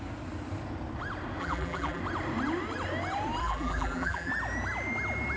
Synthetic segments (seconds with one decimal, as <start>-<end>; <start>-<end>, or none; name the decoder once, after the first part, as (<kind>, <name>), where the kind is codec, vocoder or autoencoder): 1.4-2.0 (vocoder, BigVGAN v2); 3.4-4.3